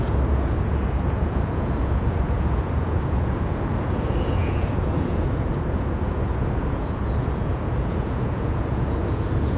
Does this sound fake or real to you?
fake